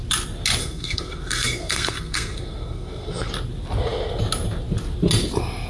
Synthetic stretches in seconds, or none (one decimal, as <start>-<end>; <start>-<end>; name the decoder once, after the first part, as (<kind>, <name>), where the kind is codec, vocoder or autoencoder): 0.6-3.3 (codec, SNAC)